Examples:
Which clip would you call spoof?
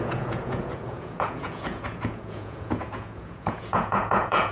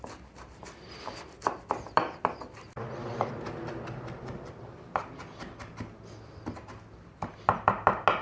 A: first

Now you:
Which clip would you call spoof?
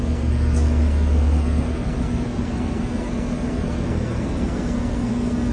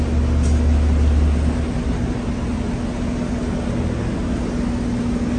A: first